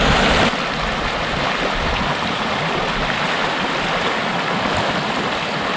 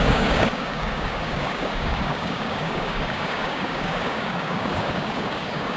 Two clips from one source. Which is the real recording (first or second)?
first